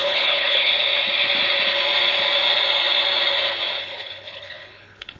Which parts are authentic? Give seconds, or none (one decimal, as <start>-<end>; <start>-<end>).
0.7-3.8